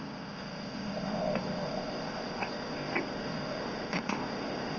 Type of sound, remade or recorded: remade